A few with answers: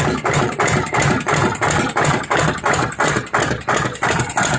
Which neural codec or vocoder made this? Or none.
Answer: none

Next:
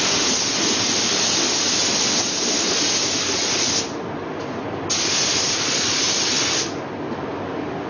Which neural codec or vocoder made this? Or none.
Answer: none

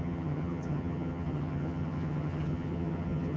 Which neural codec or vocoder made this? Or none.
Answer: vocoder, HiFi-GAN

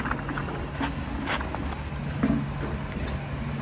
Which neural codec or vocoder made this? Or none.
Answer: none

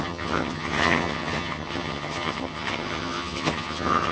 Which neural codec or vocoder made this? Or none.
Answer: vocoder, HiFi-GAN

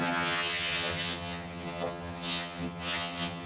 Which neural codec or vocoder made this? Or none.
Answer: vocoder, HiFi-GAN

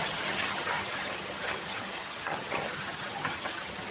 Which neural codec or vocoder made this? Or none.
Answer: vocoder, HiFi-GAN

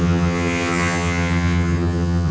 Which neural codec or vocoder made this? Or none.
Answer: vocoder, HiFi-GAN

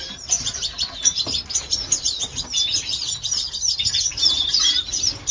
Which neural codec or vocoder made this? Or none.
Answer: none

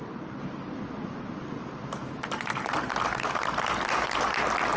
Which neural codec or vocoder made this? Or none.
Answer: none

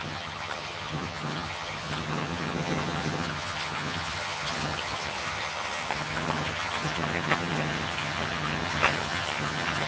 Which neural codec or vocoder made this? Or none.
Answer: vocoder, HiFi-GAN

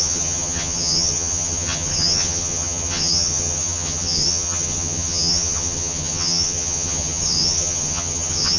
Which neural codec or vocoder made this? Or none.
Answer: vocoder, HiFi-GAN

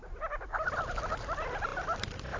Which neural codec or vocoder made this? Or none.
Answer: none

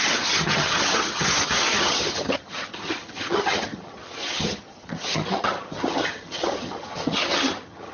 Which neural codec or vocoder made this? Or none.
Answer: vocoder, HiFi-GAN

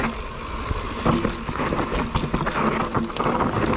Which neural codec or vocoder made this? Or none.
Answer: none